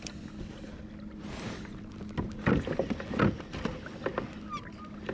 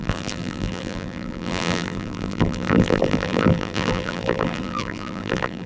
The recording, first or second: first